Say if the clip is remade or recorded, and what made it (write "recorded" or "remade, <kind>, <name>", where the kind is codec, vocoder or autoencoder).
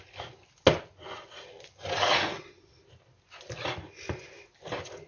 recorded